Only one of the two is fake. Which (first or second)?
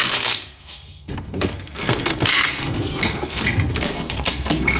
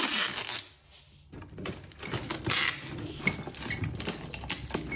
first